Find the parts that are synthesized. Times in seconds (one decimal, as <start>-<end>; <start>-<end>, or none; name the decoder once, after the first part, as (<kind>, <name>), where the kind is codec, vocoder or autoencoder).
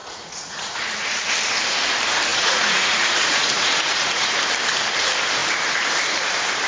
0.0-1.3 (vocoder, Vocos); 2.3-4.4